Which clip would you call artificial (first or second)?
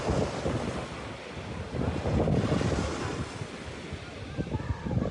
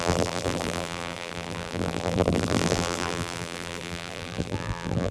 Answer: second